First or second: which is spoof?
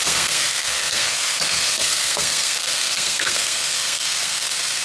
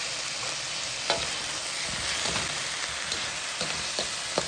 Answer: first